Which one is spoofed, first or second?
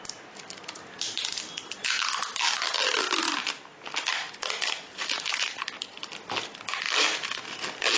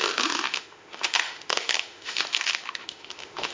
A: second